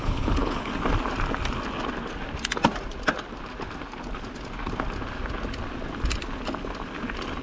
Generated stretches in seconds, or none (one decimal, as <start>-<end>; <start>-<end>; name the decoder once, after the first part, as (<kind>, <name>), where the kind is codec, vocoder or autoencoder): 0.0-0.7 (codec, HILCodec)